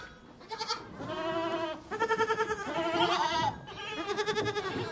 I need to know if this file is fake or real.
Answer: real